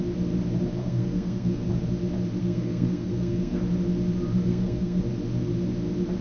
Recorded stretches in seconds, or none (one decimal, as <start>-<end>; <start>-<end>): 0.0-0.8; 1.7-2.4; 3.6-4.5; 5.0-6.2